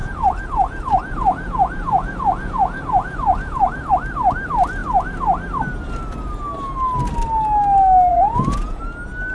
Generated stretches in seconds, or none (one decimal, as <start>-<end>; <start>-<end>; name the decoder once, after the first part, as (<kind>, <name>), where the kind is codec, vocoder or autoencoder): 0.0-3.9 (vocoder, Vocos); 8.1-8.8